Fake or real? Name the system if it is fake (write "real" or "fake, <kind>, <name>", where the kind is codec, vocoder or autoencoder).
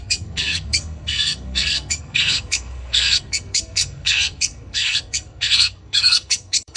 fake, codec, SNAC